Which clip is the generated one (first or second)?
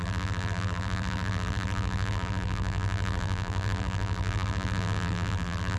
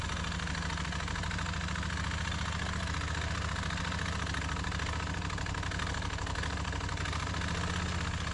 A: first